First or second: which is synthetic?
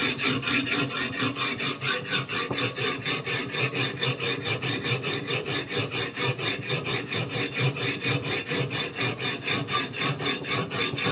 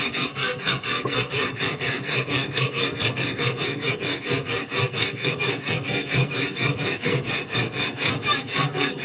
second